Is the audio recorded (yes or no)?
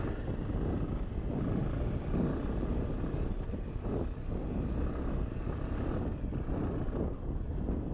yes